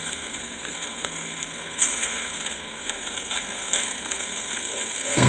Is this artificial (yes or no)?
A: yes